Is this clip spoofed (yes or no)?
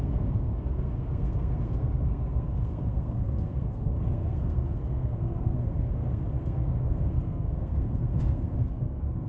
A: yes